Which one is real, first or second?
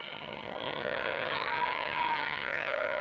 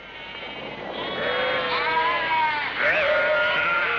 second